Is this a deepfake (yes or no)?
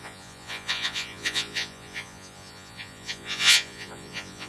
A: yes